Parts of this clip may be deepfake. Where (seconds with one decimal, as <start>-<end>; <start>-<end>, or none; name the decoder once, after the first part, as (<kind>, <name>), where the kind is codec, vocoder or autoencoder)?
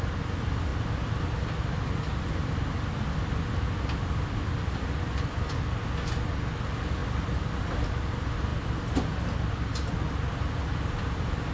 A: none